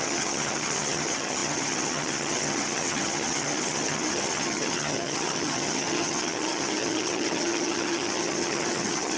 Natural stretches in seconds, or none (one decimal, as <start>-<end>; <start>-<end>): none